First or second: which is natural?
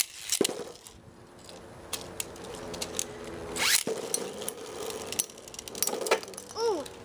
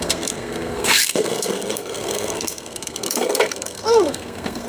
first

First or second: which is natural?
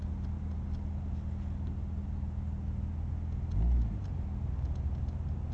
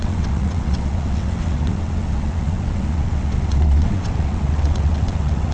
first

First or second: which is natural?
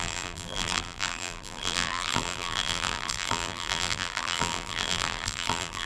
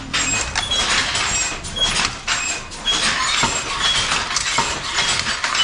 second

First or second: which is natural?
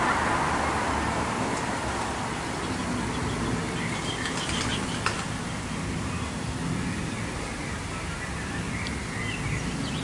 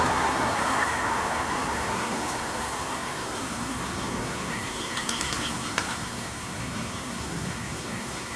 first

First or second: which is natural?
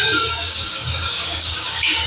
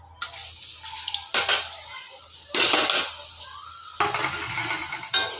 second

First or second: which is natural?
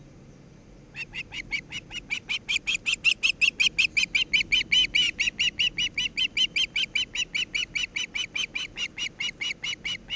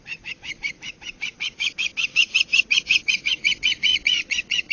first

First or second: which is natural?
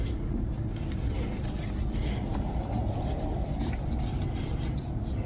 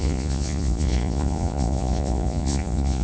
first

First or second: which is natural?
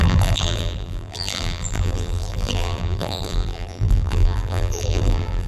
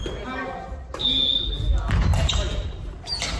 second